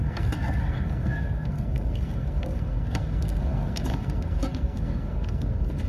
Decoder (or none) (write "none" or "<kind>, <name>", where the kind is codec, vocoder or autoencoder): codec, SNAC